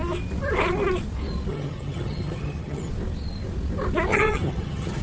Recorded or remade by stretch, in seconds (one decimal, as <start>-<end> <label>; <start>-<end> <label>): 0.0-1.5 recorded; 1.5-2.9 remade; 2.9-4.1 recorded; 4.1-5.0 remade